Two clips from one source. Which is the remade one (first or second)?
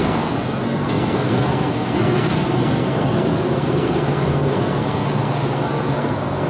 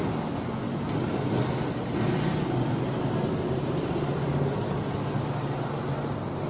first